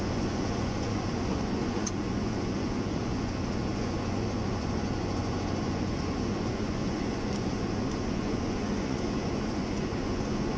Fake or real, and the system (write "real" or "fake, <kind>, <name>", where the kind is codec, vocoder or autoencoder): fake, vocoder, Vocos